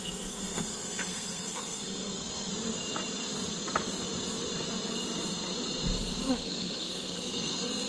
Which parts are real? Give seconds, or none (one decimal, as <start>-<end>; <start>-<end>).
2.5-6.3